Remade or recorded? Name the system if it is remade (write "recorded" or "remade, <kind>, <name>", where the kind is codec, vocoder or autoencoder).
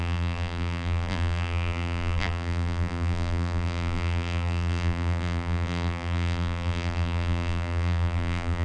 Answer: remade, vocoder, BigVGAN v2